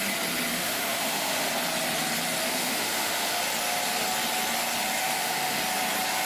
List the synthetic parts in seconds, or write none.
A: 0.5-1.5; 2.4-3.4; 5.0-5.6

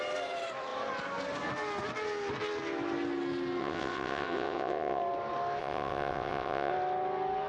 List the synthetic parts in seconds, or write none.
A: 3.6-5.0; 5.6-6.7

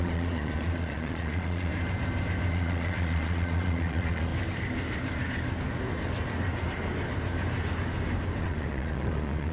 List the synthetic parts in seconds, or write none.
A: 0.0-1.7; 2.5-4.3; 8.4-9.5

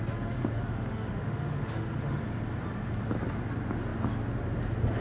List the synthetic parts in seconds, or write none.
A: 0.4-2.2

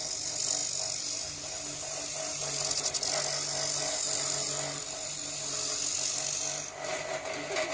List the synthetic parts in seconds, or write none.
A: none

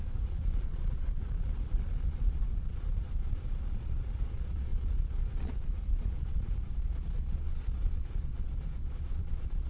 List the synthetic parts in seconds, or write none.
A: 0.0-9.7